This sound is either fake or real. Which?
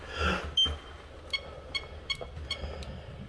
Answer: real